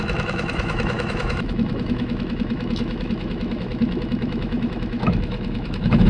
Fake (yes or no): yes